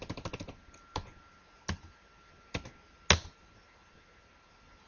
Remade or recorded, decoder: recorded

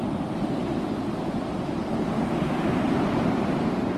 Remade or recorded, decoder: remade, vocoder, BigVGAN v2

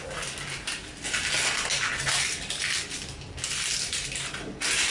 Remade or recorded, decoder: recorded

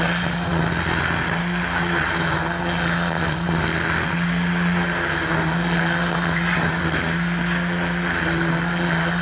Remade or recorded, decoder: recorded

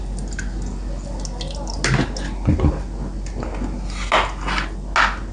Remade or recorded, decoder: recorded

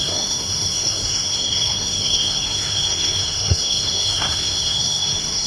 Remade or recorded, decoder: remade, codec, SNAC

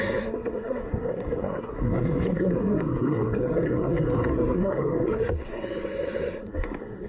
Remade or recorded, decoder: remade, codec, SNAC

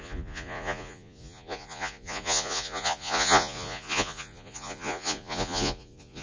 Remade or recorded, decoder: remade, vocoder, Vocos